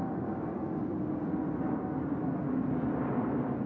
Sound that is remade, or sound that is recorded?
recorded